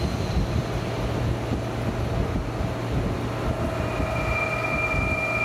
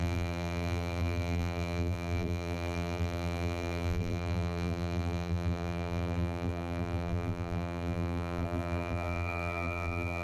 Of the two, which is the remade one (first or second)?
second